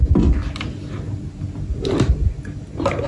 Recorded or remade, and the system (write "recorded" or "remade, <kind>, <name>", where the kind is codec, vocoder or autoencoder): recorded